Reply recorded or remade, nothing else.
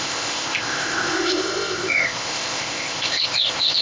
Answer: remade